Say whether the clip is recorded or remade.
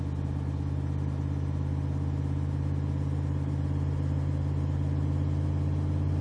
recorded